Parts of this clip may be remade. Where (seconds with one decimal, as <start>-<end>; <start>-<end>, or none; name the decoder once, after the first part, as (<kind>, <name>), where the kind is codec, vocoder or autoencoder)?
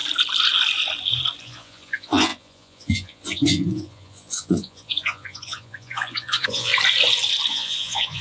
1.4-6.7 (vocoder, Vocos); 7.5-8.2